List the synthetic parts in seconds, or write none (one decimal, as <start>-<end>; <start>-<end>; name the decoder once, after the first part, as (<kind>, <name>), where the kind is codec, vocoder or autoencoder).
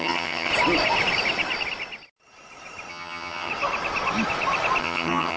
0.0-0.5 (vocoder, HiFi-GAN); 2.9-3.5; 4.8-5.4